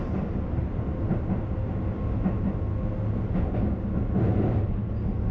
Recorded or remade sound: recorded